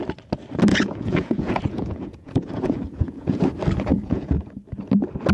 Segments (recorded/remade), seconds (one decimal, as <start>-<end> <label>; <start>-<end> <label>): 0.0-0.7 recorded; 0.7-3.4 remade; 3.4-3.9 recorded; 3.9-4.5 remade; 4.5-5.3 recorded